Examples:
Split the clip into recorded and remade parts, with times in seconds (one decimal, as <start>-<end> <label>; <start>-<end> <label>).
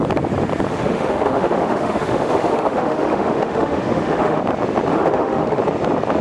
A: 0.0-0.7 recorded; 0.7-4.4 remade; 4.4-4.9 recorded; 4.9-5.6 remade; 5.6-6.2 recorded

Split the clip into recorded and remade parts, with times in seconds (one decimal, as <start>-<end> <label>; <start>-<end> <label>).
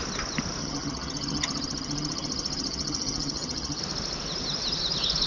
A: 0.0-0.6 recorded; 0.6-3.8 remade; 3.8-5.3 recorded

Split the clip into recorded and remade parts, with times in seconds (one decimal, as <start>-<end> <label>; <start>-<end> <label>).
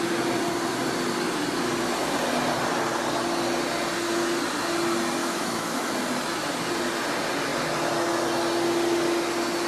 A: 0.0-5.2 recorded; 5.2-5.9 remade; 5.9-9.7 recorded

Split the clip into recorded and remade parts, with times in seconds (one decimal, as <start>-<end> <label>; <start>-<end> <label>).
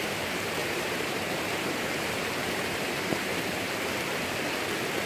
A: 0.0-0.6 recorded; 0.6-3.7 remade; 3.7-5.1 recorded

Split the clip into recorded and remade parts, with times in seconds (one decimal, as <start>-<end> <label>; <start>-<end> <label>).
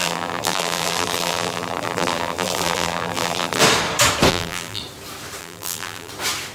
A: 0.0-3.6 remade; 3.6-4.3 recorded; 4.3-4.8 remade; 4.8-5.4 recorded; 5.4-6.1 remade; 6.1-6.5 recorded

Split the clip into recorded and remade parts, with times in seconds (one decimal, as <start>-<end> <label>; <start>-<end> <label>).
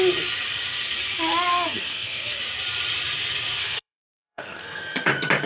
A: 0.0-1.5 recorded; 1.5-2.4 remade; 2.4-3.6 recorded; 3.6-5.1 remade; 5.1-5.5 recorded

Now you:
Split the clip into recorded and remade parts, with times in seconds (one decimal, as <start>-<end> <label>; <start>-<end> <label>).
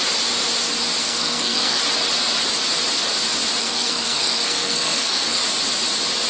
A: 0.0-1.0 recorded; 1.0-1.8 remade; 1.8-3.6 recorded; 3.6-5.4 remade; 5.4-6.3 recorded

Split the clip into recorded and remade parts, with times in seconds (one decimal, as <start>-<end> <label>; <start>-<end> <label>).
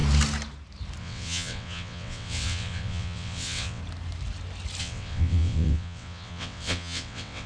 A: 0.0-1.0 recorded; 1.0-3.8 remade; 3.8-4.8 recorded; 4.8-7.5 remade